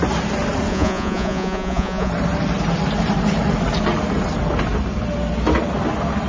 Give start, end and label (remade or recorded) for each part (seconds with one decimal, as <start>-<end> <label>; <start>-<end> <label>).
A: 0.0-0.7 recorded; 0.7-2.1 remade; 2.1-6.3 recorded

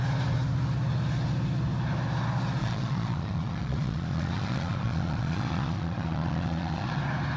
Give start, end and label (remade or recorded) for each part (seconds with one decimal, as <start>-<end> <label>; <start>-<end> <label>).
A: 0.0-2.6 recorded; 2.6-7.0 remade; 7.0-7.4 recorded

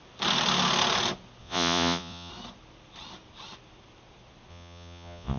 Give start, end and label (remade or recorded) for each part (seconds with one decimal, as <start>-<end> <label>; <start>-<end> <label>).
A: 0.0-1.4 recorded; 1.4-2.3 remade; 2.3-4.5 recorded; 4.5-5.4 remade

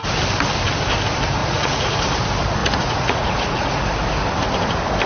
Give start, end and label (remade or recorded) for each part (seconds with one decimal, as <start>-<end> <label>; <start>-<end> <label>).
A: 0.0-1.4 recorded; 1.4-2.0 remade; 2.0-2.6 recorded; 2.6-3.8 remade; 3.8-5.1 recorded

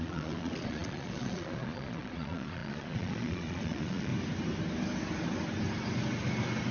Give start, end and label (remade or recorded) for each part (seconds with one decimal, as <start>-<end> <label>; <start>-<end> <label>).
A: 0.0-4.1 remade; 4.1-6.7 recorded

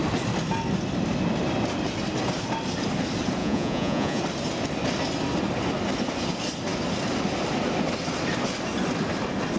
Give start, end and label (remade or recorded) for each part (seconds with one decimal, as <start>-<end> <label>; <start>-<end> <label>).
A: 0.0-3.4 recorded; 3.4-4.2 remade; 4.2-9.6 recorded

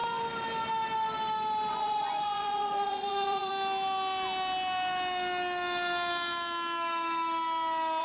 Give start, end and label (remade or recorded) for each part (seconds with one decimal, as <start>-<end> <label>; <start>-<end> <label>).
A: 0.0-1.7 recorded; 1.7-3.5 remade; 3.5-8.0 recorded

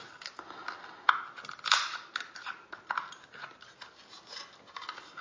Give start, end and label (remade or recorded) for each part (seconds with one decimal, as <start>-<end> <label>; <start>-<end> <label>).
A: 0.0-5.2 recorded